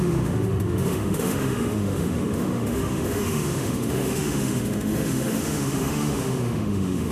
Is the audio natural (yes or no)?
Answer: no